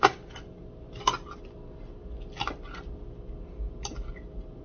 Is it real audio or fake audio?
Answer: real